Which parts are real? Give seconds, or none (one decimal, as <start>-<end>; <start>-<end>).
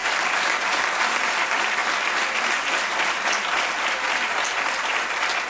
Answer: 0.0-5.5